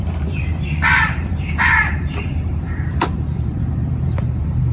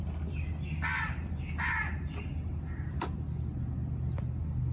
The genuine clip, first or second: second